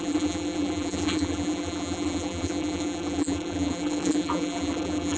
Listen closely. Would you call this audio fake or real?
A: fake